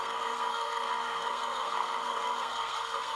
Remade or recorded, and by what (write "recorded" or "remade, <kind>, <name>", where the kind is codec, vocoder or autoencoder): remade, codec, SNAC